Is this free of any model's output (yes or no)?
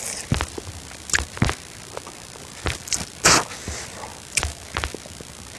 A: yes